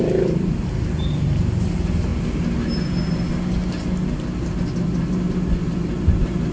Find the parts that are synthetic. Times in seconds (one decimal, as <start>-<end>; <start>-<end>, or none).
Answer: none